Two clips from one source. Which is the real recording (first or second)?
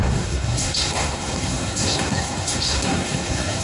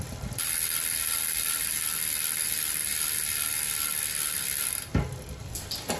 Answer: second